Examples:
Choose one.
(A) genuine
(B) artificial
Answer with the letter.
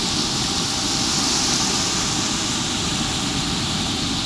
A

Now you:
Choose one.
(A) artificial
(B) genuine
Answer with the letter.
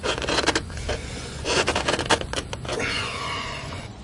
A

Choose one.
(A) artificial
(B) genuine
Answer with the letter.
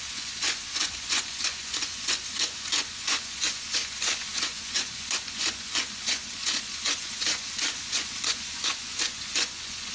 A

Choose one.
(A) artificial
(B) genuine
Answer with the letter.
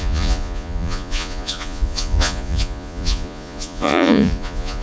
A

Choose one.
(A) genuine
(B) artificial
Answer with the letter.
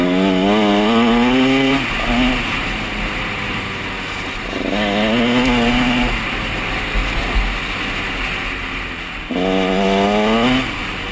A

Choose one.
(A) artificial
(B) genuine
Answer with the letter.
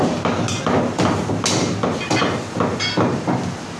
B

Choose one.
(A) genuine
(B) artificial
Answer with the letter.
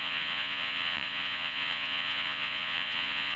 B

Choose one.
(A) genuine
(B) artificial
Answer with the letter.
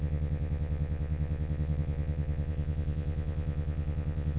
B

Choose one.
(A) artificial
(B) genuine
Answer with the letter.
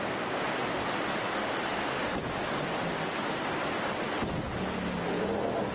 B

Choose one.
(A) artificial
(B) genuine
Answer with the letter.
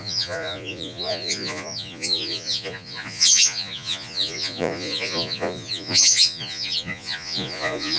A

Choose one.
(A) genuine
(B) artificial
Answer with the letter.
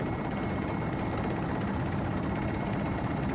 A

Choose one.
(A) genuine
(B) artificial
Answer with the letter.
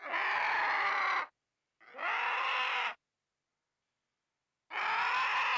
A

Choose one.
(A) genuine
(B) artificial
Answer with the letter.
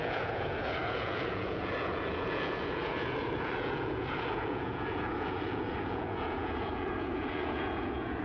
B